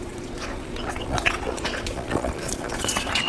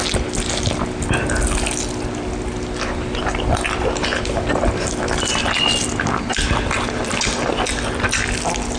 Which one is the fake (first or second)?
first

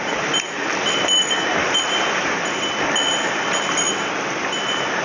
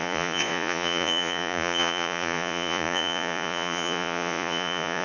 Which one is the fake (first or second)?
second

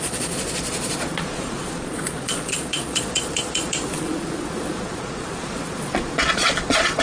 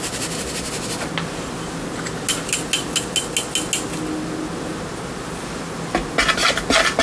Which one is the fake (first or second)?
first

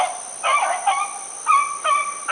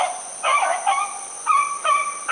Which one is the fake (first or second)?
second